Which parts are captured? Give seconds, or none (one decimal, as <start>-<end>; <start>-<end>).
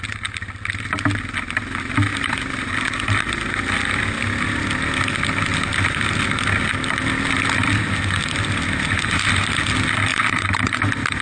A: 0.0-2.1; 2.7-10.1; 10.6-11.2